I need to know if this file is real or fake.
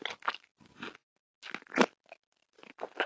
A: real